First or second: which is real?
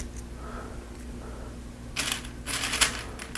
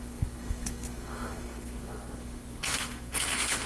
first